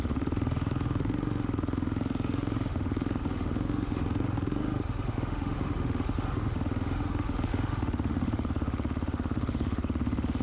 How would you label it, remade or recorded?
remade